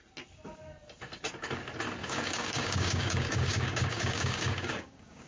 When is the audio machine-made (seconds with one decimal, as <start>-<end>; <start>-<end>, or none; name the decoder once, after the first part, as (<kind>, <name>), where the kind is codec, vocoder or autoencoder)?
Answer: 2.0-5.3 (codec, DAC)